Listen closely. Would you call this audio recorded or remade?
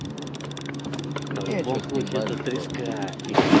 recorded